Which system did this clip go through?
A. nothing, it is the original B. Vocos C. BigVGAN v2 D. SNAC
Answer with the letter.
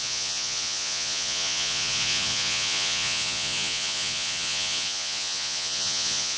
B